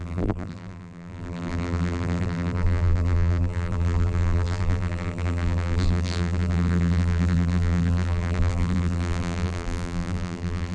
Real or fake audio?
fake